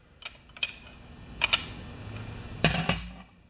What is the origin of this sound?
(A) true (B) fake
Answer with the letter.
A